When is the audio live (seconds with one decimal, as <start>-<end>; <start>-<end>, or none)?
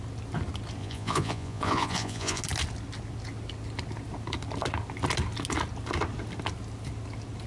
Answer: 0.0-0.8; 2.4-7.5